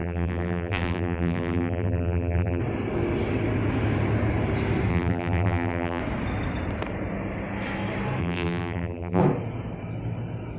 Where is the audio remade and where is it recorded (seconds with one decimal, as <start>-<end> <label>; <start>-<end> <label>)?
0.0-2.6 remade; 2.6-4.9 recorded; 4.9-6.0 remade; 6.0-8.2 recorded; 8.2-9.2 remade; 9.2-10.6 recorded